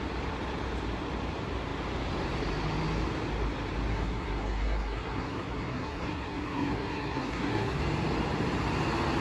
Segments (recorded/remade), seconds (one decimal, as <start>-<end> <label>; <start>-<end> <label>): 0.0-3.9 recorded; 3.9-7.8 remade; 7.8-9.2 recorded